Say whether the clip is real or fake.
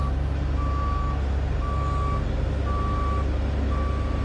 real